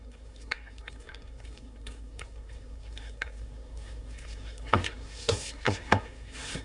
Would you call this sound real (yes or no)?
no